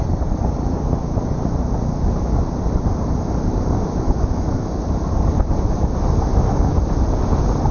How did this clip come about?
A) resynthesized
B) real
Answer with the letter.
B